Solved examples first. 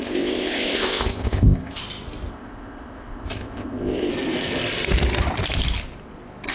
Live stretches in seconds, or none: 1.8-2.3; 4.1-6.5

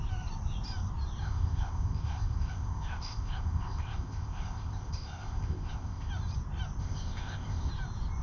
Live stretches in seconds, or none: 0.0-1.2; 6.1-6.8; 7.7-8.2

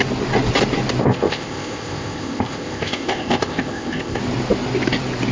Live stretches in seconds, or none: 0.0-1.0; 4.2-5.3

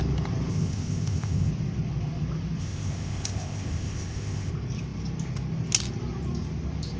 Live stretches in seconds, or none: 0.0-0.5; 1.5-2.6; 4.5-7.0